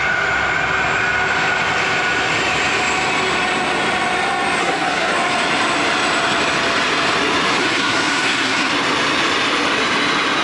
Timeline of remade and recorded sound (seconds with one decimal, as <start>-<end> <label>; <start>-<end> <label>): 0.0-4.6 recorded; 4.6-5.1 remade; 5.1-7.6 recorded; 7.6-8.7 remade; 8.7-10.4 recorded